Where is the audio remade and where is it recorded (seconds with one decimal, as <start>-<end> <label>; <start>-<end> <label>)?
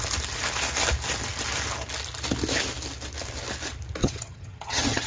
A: 0.0-4.0 recorded; 4.0-5.1 remade